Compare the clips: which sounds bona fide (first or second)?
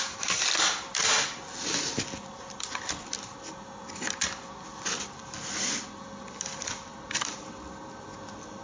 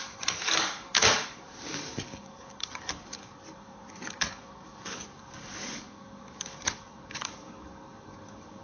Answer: first